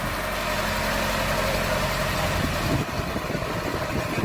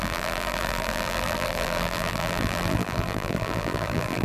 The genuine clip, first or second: first